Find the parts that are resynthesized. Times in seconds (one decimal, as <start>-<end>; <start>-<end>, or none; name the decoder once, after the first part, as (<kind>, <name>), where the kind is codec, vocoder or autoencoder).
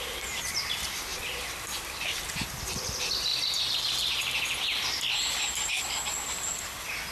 1.1-2.4 (vocoder, BigVGAN v2)